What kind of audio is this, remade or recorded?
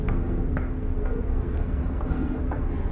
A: remade